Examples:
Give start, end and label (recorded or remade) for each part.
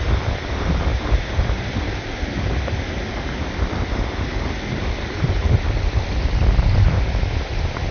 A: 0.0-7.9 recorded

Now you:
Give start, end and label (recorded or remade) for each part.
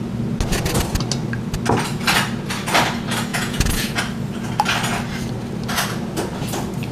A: 0.0-3.3 recorded; 3.3-4.0 remade; 4.0-6.9 recorded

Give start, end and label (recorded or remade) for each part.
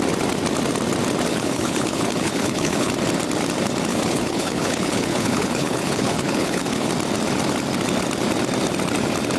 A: 0.0-1.3 recorded; 1.3-2.9 remade; 2.9-3.9 recorded; 3.9-6.9 remade; 6.9-9.4 recorded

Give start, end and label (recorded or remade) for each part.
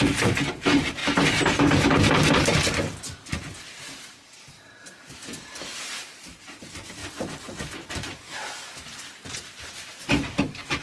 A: 0.0-1.0 remade; 1.0-3.6 recorded; 3.6-10.8 remade